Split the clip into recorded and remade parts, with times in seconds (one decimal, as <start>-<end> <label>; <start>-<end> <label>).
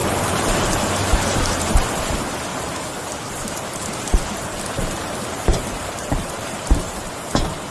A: 0.0-2.1 remade; 2.1-2.5 recorded; 2.5-7.1 remade; 7.1-7.7 recorded